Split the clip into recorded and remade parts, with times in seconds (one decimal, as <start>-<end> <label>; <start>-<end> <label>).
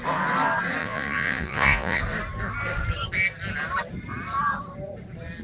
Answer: 0.0-0.8 recorded; 0.8-2.0 remade; 2.0-5.4 recorded